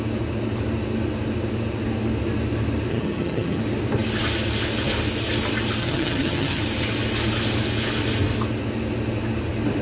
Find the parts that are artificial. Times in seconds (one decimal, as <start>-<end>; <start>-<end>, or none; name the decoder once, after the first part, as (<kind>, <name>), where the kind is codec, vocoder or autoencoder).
2.9-3.6 (vocoder, HiFi-GAN); 5.8-6.6